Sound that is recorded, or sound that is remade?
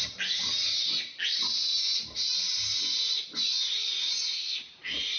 recorded